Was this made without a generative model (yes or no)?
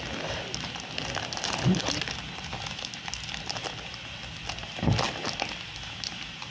yes